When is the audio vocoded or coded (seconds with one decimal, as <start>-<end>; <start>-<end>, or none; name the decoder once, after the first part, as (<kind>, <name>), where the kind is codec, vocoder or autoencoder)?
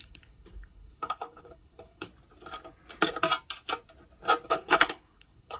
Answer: 0.0-2.1 (codec, HILCodec); 4.4-5.6